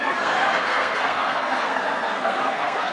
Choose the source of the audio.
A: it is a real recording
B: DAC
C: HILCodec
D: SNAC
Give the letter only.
D